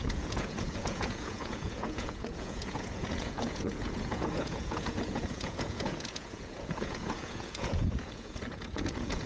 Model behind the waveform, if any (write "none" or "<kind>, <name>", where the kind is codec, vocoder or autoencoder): vocoder, Vocos